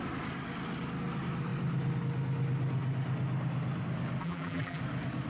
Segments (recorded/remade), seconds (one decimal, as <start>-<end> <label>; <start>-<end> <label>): 0.0-4.2 recorded; 4.2-4.8 remade; 4.8-5.3 recorded